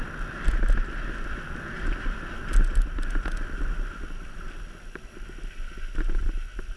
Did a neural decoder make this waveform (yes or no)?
no